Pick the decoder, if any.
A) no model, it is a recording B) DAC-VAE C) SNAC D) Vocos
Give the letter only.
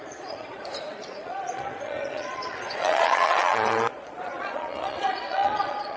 D